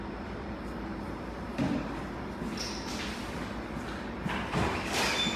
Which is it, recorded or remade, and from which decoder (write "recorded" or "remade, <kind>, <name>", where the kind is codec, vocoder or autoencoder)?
recorded